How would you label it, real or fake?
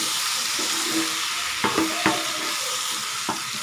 fake